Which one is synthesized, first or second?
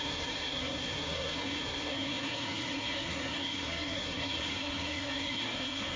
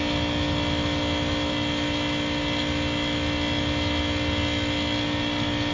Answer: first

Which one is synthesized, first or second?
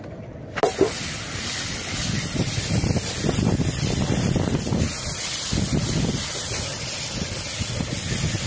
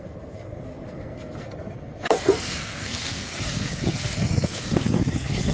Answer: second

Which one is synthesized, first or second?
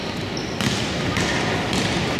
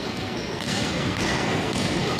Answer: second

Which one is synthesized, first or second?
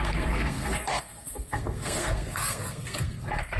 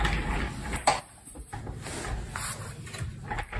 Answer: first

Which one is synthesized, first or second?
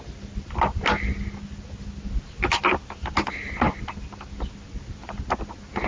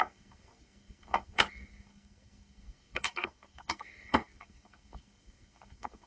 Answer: second